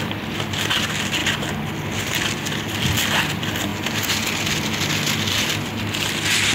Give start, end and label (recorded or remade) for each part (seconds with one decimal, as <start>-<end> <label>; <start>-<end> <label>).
0.0-6.5 recorded

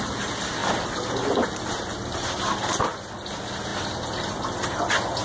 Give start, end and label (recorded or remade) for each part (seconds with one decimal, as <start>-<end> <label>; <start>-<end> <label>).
0.0-5.2 recorded

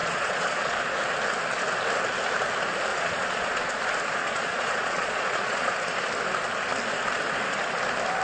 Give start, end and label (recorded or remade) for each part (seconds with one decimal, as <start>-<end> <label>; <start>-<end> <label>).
0.0-1.0 remade; 1.0-2.9 recorded; 2.9-3.7 remade; 3.7-4.2 recorded; 4.2-5.7 remade; 5.7-8.2 recorded